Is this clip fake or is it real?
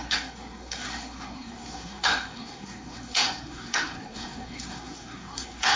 fake